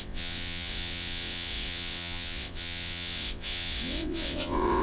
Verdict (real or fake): fake